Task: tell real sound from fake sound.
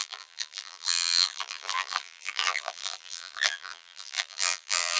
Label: fake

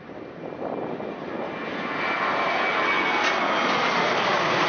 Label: real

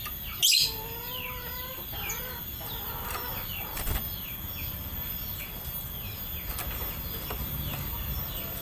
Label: real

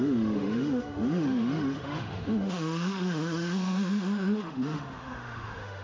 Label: fake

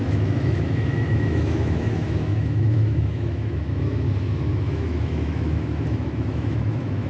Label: fake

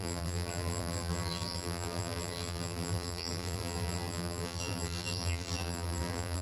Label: fake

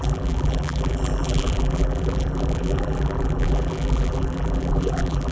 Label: fake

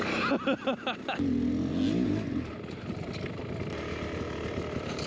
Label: real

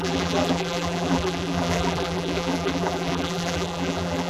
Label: fake